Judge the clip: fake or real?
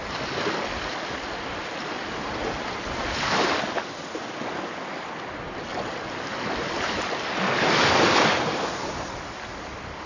real